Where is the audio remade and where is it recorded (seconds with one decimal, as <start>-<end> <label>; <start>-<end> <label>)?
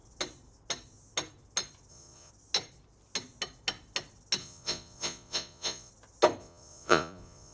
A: 0.0-1.9 recorded; 1.9-2.3 remade; 2.3-4.4 recorded; 4.4-5.9 remade; 5.9-6.4 recorded; 6.4-7.5 remade